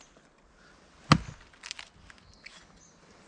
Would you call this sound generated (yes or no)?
no